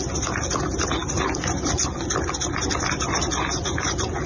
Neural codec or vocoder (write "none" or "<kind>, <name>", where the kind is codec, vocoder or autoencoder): none